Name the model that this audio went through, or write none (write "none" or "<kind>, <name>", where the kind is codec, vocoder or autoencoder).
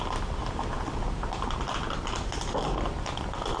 none